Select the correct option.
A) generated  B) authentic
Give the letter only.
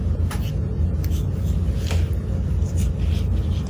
B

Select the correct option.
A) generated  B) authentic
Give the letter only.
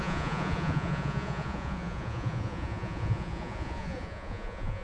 A